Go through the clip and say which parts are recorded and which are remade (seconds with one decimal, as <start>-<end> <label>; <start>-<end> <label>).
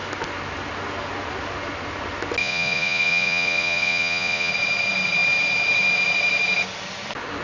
0.0-2.4 recorded; 2.4-4.5 remade; 4.5-7.4 recorded